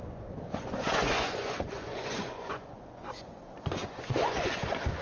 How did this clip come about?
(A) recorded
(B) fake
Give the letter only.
B